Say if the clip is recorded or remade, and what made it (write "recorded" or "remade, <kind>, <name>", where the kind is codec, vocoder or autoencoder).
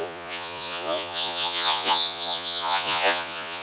remade, vocoder, Vocos